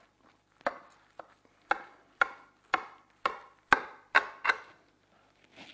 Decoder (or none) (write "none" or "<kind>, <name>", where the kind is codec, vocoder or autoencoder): none